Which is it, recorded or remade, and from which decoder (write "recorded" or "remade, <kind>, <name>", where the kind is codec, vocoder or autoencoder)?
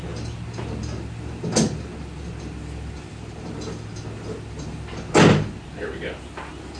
recorded